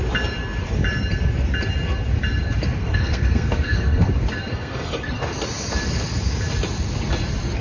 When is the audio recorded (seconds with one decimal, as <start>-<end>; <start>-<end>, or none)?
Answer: 0.0-2.8; 4.1-4.5; 5.2-7.6